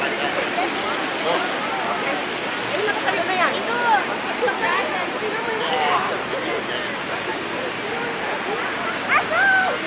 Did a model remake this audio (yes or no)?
no